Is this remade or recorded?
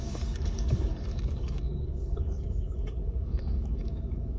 remade